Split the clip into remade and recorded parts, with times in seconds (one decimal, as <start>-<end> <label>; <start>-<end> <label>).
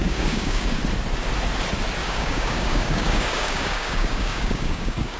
0.0-0.8 remade; 0.8-2.0 recorded; 2.0-5.2 remade